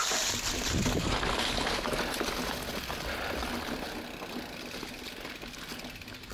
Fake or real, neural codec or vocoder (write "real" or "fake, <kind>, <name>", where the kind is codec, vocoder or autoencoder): real